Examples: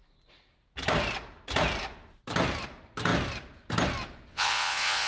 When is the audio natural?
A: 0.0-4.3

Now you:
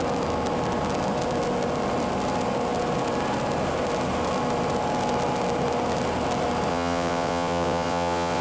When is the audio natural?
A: 0.0-6.7

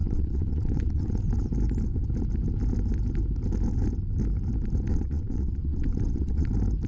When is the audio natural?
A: 1.2-4.9; 6.5-6.9

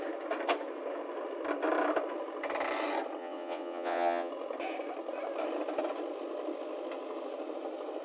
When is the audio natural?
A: 0.0-3.2; 4.3-8.0

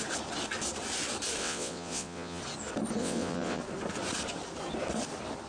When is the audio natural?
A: 0.0-1.4; 2.4-3.0; 3.6-5.5

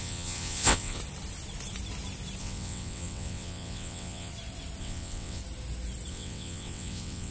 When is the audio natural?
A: 1.0-2.4; 4.3-4.8; 5.4-6.1

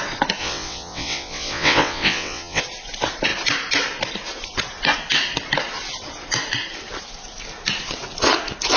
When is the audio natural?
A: 0.0-0.4; 2.6-8.8